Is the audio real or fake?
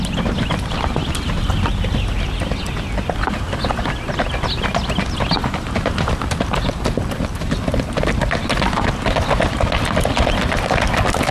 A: real